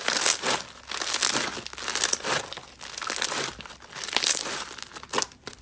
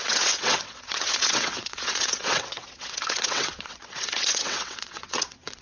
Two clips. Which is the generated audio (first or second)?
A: second